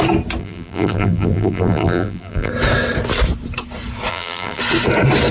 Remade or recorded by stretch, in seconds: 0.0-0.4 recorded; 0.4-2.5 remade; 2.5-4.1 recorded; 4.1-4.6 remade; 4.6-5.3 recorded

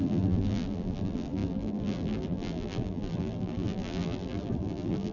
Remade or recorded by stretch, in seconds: 0.0-5.1 remade

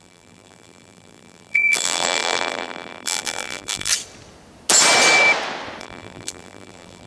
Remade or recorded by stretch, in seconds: 0.0-3.9 remade; 3.9-5.8 recorded; 5.8-7.1 remade

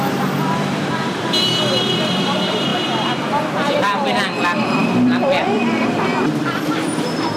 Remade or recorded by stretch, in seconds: 0.0-7.4 remade

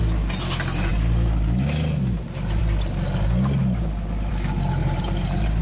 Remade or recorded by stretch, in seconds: 0.0-4.8 recorded; 4.8-5.6 remade

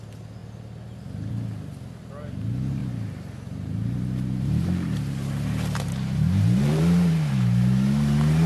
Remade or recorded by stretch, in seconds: 0.0-2.8 recorded; 2.8-7.3 remade; 7.3-8.5 recorded